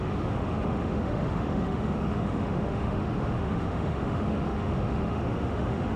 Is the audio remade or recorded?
remade